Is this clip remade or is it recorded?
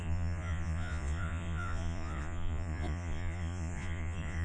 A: remade